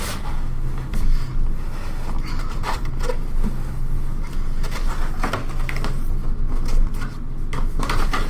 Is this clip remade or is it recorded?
recorded